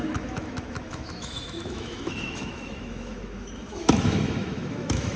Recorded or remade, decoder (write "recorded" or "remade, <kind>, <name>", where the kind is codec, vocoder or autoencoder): remade, autoencoder, DAC-VAE